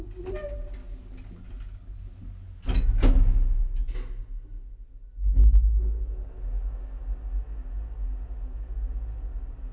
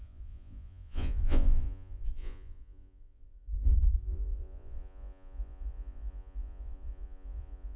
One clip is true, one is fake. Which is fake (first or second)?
second